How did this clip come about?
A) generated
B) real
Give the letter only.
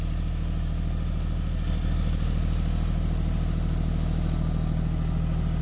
B